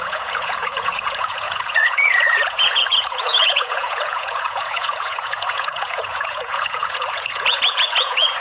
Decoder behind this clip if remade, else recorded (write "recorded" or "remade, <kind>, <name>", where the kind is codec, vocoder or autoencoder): remade, vocoder, Vocos